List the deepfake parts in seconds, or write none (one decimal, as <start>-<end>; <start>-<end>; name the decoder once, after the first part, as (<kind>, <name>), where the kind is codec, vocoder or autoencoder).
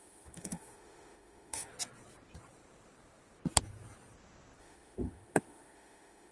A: 0.0-1.7 (autoencoder, DAC-VAE); 4.6-6.3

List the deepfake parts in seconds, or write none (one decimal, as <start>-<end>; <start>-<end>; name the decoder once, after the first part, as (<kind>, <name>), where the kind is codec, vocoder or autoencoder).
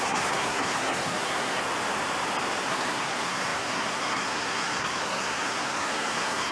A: 0.0-1.6 (codec, SNAC); 2.7-6.5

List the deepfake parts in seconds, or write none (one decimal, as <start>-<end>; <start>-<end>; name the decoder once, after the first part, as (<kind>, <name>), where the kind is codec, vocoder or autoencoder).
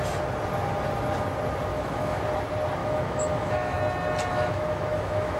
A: 1.7-2.2 (autoencoder, DAC-VAE); 2.8-3.8; 4.3-5.4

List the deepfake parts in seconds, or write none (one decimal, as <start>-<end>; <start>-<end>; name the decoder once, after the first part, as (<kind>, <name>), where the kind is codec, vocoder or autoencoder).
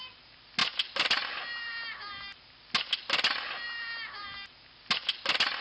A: none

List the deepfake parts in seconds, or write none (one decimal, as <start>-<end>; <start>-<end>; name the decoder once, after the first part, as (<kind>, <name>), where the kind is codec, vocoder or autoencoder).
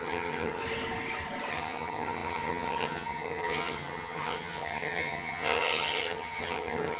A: 0.0-0.6 (vocoder, HiFi-GAN); 1.5-7.0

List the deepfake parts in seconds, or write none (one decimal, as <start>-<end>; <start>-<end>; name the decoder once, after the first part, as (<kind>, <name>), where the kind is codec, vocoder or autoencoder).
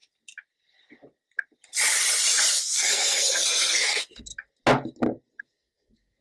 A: 2.5-4.3 (codec, SNAC); 5.4-6.2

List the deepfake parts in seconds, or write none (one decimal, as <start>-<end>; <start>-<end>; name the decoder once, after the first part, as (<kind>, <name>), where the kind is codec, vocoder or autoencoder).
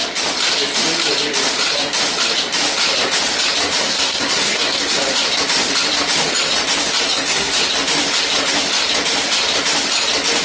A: 3.8-5.0 (codec, SNAC); 7.0-7.6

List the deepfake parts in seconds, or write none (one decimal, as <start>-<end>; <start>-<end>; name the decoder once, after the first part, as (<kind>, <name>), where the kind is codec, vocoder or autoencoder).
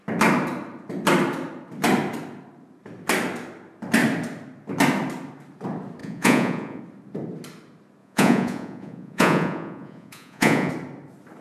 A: 6.0-6.8 (vocoder, Vocos); 8.0-10.7